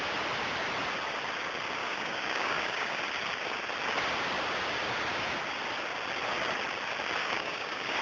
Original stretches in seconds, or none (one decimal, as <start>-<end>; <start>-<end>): 0.0-1.8; 3.0-7.2